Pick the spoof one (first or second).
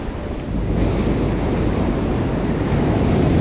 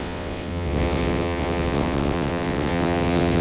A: second